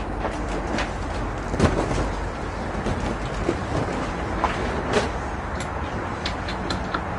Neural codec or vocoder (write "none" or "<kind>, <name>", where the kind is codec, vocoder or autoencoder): none